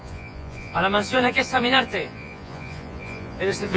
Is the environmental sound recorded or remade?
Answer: remade